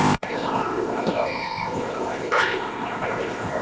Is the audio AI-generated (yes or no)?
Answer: yes